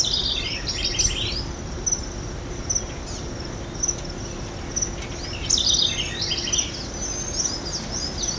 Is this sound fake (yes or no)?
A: no